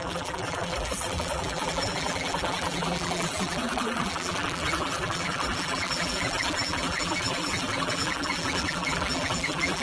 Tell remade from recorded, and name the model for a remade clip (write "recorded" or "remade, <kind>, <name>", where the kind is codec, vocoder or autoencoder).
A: remade, vocoder, BigVGAN v2